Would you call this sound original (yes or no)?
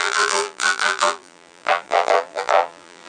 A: no